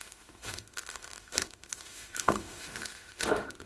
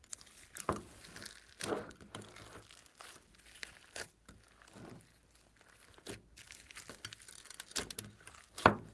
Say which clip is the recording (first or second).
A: second